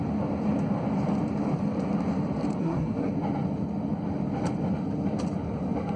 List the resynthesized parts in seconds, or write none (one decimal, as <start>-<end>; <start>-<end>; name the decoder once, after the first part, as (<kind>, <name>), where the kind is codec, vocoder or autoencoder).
2.6-3.1 (codec, SNAC)